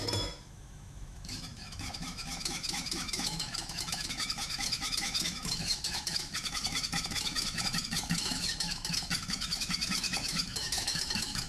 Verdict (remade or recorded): remade